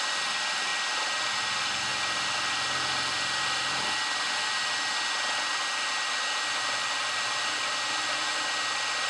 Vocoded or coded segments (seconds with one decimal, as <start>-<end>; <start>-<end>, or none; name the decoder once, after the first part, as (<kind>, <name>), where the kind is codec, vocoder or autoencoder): none